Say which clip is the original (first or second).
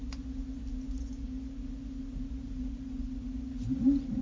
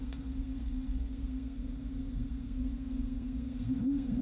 first